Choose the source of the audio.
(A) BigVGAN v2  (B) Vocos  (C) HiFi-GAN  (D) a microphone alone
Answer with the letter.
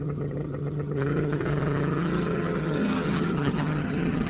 C